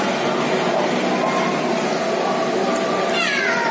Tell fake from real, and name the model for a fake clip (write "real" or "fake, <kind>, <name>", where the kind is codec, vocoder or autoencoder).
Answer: real